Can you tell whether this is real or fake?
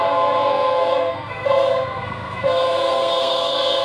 fake